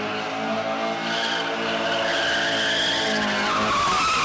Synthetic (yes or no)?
no